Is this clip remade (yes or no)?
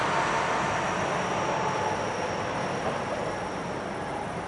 no